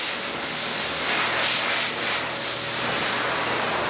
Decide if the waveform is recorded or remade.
recorded